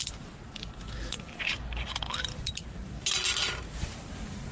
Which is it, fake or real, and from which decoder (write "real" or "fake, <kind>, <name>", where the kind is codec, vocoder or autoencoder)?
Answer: real